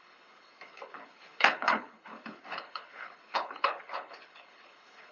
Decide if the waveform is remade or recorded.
remade